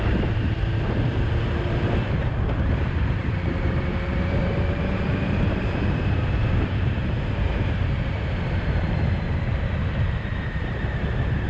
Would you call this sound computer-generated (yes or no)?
yes